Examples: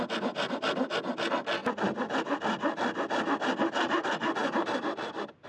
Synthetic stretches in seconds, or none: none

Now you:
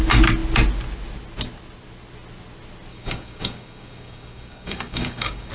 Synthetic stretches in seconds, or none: 2.9-5.5 (codec, DAC)

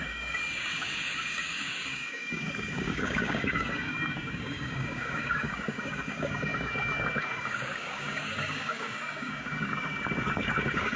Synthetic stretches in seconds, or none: 0.0-11.0 (codec, DAC)

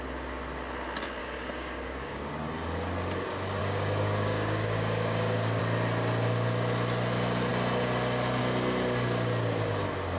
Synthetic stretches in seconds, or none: 1.2-2.3 (codec, DAC); 3.6-5.6

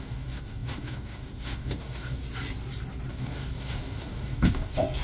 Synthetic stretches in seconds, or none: 0.0-2.2 (codec, DAC); 3.1-5.0